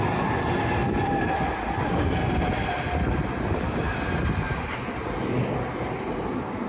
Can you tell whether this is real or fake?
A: real